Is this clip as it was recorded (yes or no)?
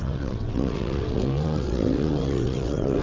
no